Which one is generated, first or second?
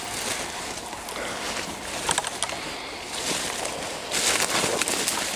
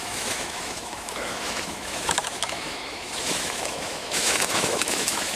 second